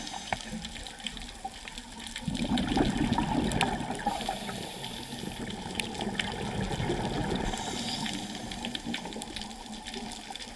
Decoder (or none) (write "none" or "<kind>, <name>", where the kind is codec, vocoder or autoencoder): none